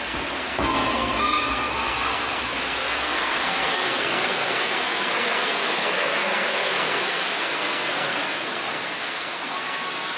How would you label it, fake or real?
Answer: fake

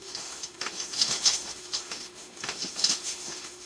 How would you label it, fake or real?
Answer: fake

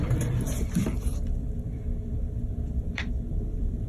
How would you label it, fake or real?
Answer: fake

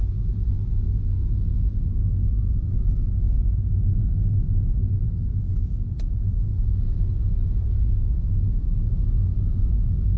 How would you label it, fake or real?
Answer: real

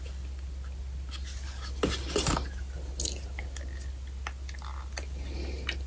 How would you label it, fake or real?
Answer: real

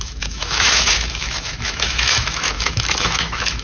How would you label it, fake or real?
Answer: fake